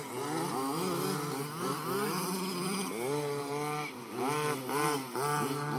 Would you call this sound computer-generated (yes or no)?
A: no